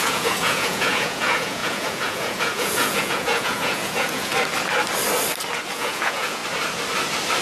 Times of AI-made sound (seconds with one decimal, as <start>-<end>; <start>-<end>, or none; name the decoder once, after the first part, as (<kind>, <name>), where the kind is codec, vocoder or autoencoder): 0.0-4.3 (vocoder, Vocos); 5.7-6.4